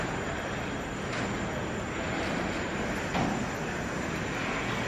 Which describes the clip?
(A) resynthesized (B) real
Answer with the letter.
B